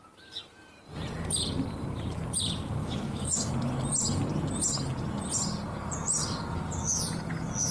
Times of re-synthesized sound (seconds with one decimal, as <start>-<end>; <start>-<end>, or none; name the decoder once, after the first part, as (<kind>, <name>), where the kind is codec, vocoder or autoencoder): 2.8-3.5 (codec, DAC)